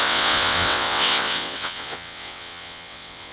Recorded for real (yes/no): no